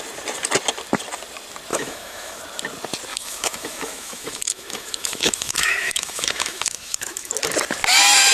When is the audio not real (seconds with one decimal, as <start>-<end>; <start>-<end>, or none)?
1.7-2.4; 3.1-7.3